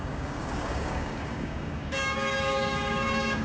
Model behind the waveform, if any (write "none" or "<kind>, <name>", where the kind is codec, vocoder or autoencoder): codec, DAC